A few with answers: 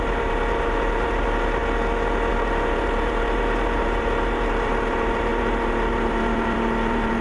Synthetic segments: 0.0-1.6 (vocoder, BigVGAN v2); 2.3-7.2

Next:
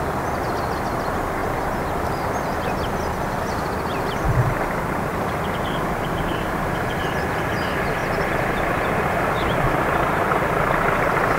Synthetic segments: 5.1-7.0 (vocoder, BigVGAN v2)

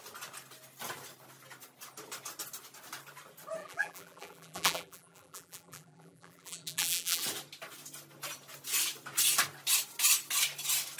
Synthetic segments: 3.6-7.2 (vocoder, BigVGAN v2)

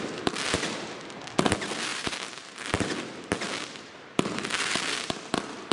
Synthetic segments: 1.9-2.8 (vocoder, BigVGAN v2)